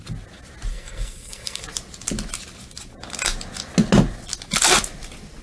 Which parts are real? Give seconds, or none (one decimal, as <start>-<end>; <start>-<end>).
0.0-0.7; 1.6-5.4